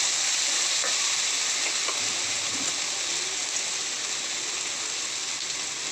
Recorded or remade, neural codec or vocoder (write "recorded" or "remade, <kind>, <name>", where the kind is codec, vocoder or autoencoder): recorded